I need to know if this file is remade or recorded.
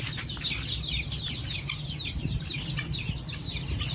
recorded